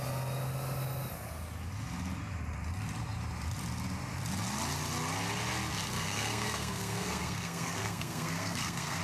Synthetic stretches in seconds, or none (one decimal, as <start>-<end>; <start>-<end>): 6.0-9.0